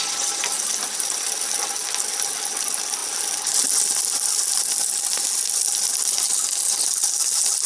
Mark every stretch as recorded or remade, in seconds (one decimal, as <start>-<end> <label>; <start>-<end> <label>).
0.0-7.7 recorded